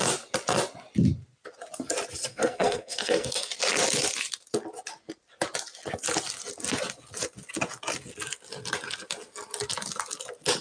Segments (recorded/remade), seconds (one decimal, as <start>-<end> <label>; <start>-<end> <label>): 0.0-2.3 recorded; 2.3-3.5 remade; 3.5-10.6 recorded